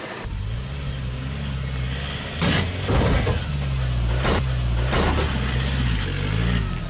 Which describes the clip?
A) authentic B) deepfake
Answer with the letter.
A